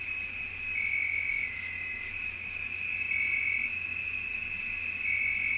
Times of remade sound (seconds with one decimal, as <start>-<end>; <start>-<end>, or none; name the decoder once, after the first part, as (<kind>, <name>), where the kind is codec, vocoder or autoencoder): none